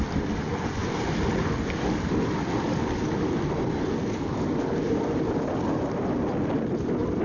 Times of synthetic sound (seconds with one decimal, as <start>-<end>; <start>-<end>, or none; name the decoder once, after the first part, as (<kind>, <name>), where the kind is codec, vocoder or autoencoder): none